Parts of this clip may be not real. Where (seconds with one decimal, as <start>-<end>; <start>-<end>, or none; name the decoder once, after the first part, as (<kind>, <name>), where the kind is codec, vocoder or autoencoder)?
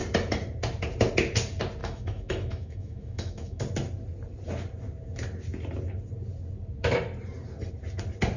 1.8-3.6 (autoencoder, DAC-VAE)